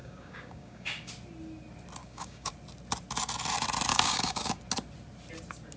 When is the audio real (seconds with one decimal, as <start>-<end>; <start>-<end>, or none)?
1.1-2.0; 2.5-3.9; 4.6-5.8